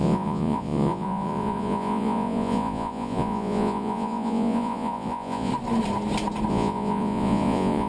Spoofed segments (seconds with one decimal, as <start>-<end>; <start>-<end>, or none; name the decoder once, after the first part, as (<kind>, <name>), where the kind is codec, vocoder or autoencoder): 0.0-5.5 (vocoder, Vocos); 6.5-7.9